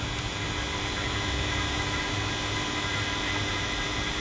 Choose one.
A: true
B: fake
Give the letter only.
A